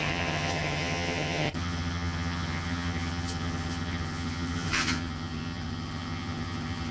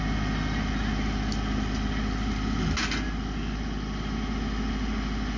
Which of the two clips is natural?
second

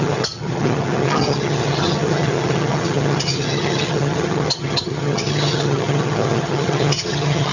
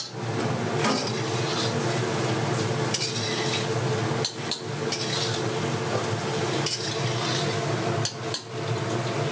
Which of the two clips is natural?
second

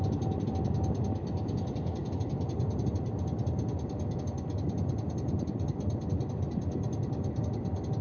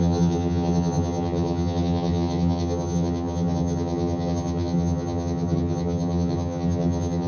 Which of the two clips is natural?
first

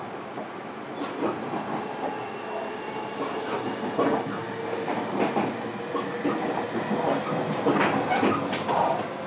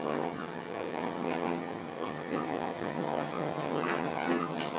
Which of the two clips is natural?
first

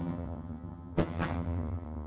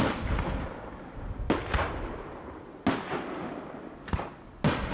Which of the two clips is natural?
second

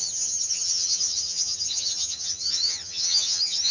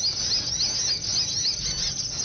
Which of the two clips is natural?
second